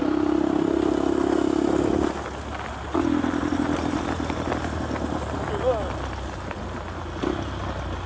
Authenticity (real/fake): real